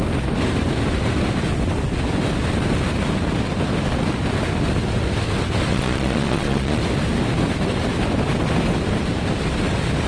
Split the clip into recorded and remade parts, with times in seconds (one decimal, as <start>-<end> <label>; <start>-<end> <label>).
0.0-5.7 recorded; 5.7-6.8 remade; 6.8-10.1 recorded